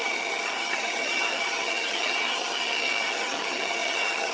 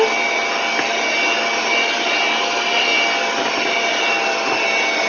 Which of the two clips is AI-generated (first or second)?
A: first